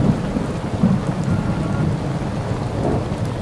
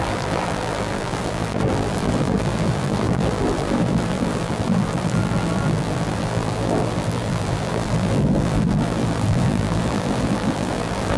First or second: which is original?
first